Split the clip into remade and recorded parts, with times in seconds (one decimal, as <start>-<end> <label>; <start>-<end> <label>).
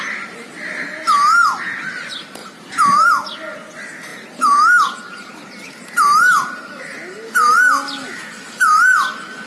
0.0-2.4 recorded; 2.4-3.1 remade; 3.1-4.1 recorded; 4.1-6.8 remade; 6.8-9.5 recorded